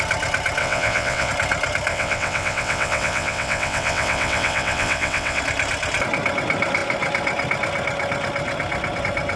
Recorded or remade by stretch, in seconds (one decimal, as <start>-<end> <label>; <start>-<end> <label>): 0.0-0.6 recorded; 0.6-1.3 remade; 1.3-1.9 recorded; 1.9-5.4 remade; 5.4-9.4 recorded